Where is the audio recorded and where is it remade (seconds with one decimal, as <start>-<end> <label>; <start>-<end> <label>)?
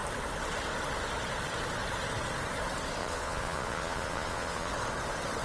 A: 0.0-3.0 recorded; 3.0-4.7 remade; 4.7-5.4 recorded